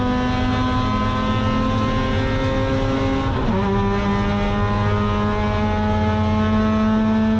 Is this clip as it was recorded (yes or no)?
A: yes